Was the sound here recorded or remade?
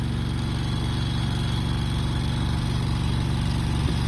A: recorded